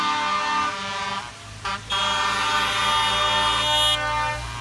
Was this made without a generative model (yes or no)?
yes